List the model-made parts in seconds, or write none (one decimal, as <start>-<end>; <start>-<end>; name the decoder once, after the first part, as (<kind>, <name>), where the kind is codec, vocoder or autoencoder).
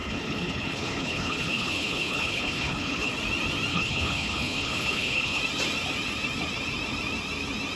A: 0.0-3.1 (codec, HILCodec); 3.7-5.4